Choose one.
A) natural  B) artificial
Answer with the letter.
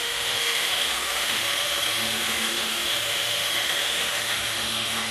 B